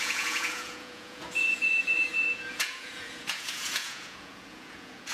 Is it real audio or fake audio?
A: fake